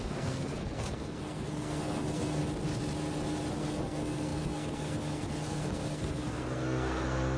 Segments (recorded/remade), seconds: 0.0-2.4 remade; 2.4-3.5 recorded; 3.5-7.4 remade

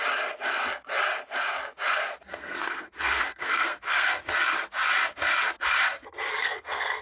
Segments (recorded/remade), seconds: 0.0-2.3 recorded; 2.3-4.2 remade; 4.2-6.3 recorded; 6.3-7.0 remade

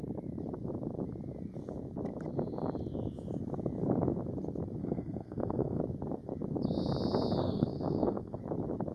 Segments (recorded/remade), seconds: 0.0-4.8 recorded; 4.8-5.8 remade; 5.8-7.4 recorded; 7.4-8.4 remade; 8.4-8.9 recorded

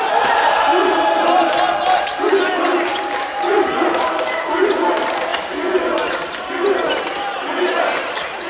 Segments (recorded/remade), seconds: 0.0-0.7 remade; 0.7-2.0 recorded; 2.0-5.3 remade; 5.3-6.5 recorded; 6.5-8.5 remade

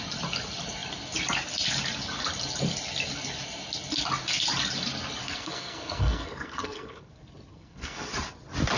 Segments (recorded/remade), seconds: 0.0-5.2 recorded; 5.2-7.1 remade; 7.1-7.5 recorded; 7.5-8.1 remade; 8.1-8.8 recorded